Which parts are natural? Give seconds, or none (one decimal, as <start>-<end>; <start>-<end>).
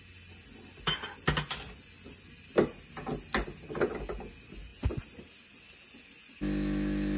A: 0.0-7.2